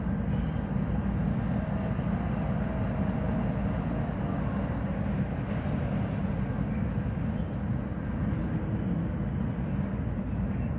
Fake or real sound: real